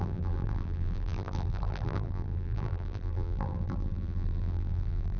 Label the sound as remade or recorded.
remade